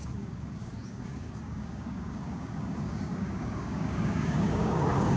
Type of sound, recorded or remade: remade